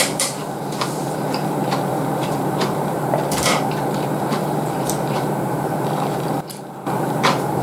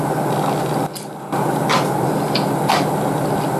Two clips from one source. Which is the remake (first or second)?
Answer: first